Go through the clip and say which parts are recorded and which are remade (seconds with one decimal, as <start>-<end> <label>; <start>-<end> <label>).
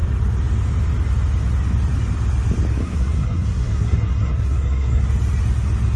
0.0-2.8 recorded; 2.8-5.0 remade; 5.0-6.0 recorded